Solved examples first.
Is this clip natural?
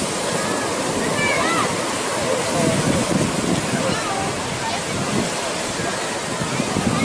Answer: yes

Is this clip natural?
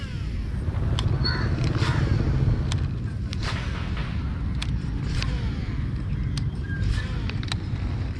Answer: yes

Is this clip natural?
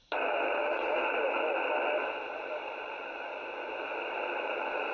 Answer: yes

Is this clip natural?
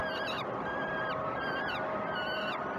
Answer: yes